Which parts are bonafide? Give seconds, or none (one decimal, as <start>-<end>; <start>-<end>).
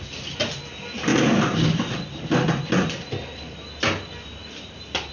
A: 0.0-5.1